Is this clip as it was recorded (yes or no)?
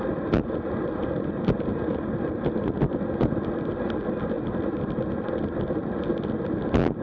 yes